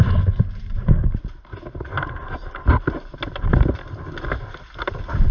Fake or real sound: real